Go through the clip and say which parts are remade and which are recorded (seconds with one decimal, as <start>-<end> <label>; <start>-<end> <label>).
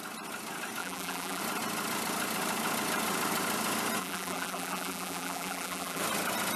0.0-0.8 recorded; 0.8-1.4 remade; 1.4-4.0 recorded; 4.0-6.0 remade; 6.0-6.6 recorded